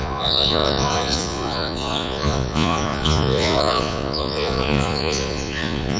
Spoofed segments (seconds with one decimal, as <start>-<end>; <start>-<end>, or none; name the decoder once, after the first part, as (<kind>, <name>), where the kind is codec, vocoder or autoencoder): 0.0-6.0 (vocoder, Vocos)